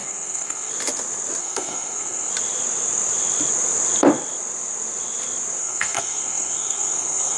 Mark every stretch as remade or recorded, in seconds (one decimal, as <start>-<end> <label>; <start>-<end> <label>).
0.0-0.7 remade; 0.7-1.4 recorded; 1.4-2.3 remade; 2.3-5.6 recorded; 5.6-7.4 remade